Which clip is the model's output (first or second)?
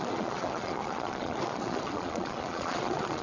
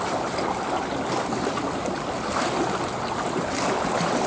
first